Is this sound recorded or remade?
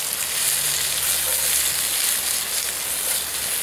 recorded